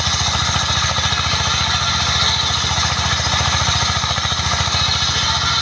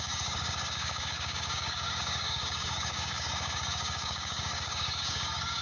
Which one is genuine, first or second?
first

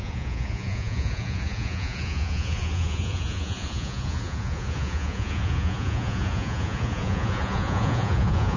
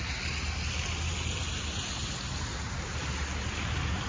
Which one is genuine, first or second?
second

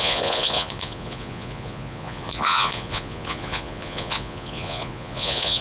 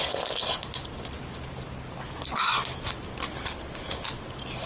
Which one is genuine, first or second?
second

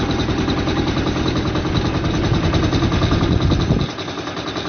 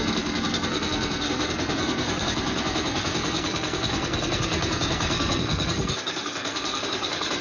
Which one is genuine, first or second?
first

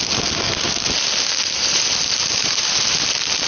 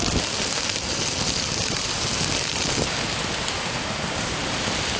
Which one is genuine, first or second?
second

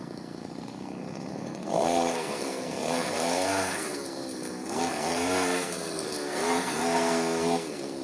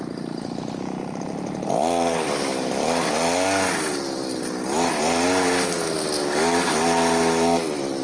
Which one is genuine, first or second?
second